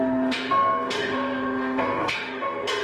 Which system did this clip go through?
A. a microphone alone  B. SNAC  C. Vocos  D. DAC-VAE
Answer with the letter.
D